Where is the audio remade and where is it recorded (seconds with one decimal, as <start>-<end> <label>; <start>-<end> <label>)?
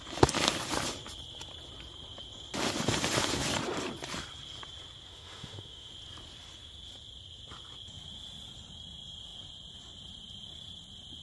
0.0-5.1 recorded; 5.1-5.9 remade; 5.9-11.2 recorded